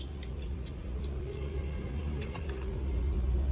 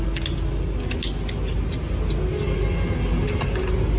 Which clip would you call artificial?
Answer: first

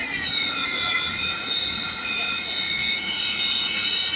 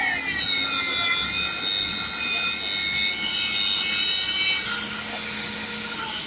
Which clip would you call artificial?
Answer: first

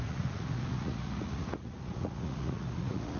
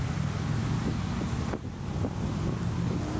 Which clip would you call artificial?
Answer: first